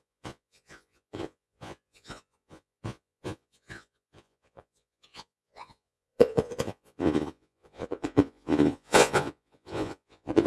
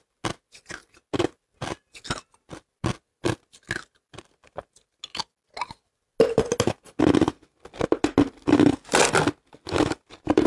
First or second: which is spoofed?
first